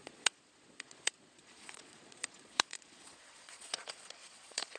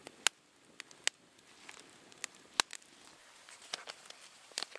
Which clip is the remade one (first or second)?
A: first